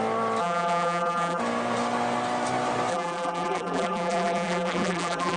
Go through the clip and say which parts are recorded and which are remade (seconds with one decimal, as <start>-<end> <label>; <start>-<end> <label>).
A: 0.0-0.4 recorded; 0.4-1.4 remade; 1.4-2.9 recorded; 2.9-5.4 remade